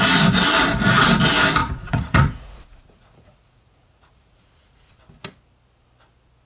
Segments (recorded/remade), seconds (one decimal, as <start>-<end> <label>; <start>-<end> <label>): 0.0-1.6 recorded; 1.6-4.9 remade; 4.9-6.5 recorded